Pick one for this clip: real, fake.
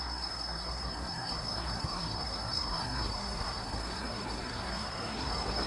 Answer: fake